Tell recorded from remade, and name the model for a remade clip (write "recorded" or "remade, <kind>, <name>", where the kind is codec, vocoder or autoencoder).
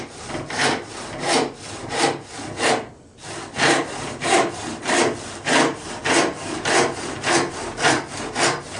remade, vocoder, BigVGAN v2